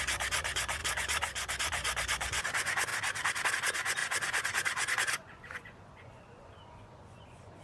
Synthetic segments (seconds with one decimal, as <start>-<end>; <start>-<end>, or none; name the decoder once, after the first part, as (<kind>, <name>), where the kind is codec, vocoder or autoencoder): 0.0-2.9 (vocoder, Vocos); 3.5-7.6